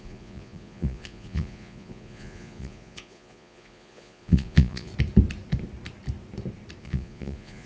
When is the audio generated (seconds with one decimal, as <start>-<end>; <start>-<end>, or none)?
0.0-4.9; 6.8-7.7